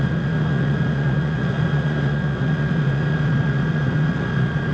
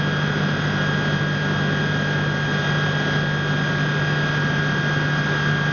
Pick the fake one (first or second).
first